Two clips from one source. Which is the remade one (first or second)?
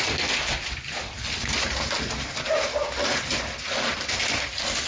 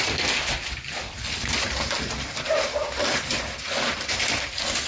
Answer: second